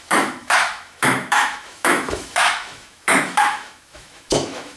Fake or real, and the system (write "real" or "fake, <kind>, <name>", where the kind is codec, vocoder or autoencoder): fake, autoencoder, DAC-VAE